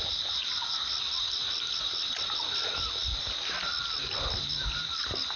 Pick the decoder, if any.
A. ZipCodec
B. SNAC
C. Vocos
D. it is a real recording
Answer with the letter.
D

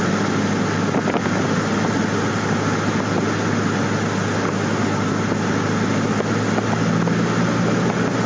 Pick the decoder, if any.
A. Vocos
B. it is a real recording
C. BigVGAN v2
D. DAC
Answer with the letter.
B